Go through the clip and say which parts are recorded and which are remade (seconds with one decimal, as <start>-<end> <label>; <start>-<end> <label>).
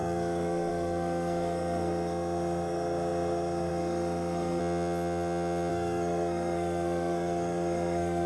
0.0-4.6 remade; 4.6-5.7 recorded; 5.7-8.3 remade